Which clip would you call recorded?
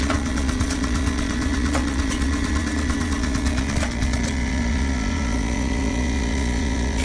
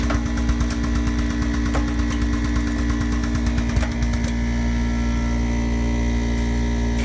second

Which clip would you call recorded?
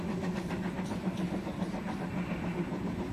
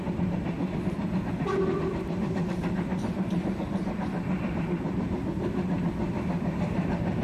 first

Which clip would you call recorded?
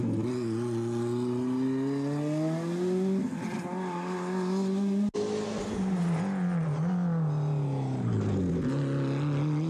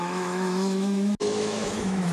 first